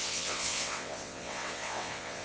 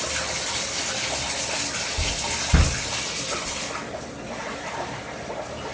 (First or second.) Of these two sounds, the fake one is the first